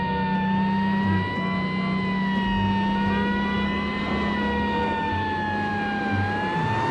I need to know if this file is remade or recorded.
recorded